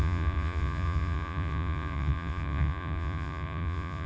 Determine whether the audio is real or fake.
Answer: fake